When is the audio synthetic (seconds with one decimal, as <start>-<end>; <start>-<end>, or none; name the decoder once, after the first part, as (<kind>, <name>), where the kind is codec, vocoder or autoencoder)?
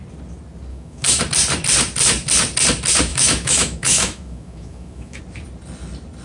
0.7-1.2 (autoencoder, DAC-VAE); 3.1-5.2